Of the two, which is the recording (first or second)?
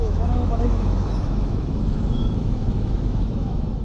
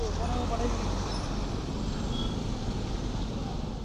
second